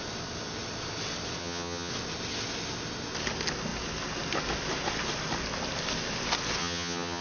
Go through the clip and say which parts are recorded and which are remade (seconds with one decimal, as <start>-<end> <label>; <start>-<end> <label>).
0.0-1.4 recorded; 1.4-1.9 remade; 1.9-6.6 recorded; 6.6-7.2 remade